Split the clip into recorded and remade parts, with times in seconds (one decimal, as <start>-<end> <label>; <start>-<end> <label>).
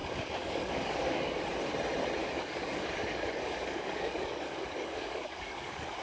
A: 0.0-1.4 remade; 1.4-2.2 recorded; 2.2-6.0 remade